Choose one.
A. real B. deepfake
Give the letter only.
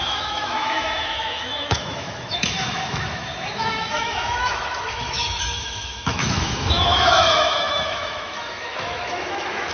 B